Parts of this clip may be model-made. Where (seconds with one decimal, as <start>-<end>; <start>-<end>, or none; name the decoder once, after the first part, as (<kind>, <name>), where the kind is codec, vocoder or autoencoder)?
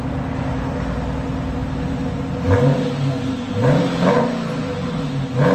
none